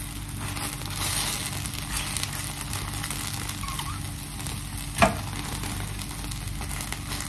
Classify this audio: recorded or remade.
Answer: recorded